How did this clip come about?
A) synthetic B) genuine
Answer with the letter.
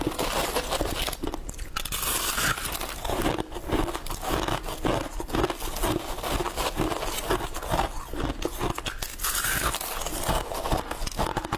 B